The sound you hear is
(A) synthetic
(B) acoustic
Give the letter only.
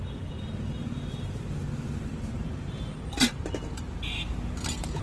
B